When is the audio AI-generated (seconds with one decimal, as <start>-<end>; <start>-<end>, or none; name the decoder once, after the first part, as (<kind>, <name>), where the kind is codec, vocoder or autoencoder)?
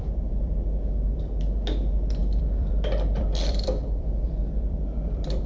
0.0-5.5 (vocoder, BigVGAN v2)